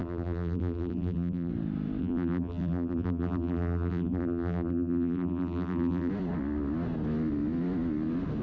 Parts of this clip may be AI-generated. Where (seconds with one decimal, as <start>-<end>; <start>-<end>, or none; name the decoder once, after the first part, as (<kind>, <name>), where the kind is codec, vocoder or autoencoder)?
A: 0.0-1.5 (vocoder, BigVGAN v2); 2.0-6.1